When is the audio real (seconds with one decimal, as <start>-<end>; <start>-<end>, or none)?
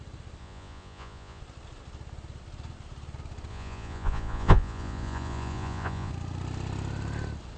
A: 0.0-0.4; 1.4-3.5; 6.1-7.6